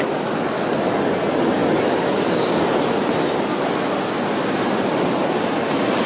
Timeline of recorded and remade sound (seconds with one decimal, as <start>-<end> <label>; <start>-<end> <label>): 0.0-6.1 recorded